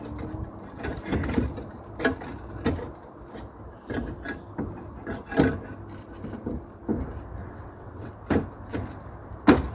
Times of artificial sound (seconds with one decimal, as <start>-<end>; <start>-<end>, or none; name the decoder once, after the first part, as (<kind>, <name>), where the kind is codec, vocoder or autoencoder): 7.4-8.1 (vocoder, WaveNeXt)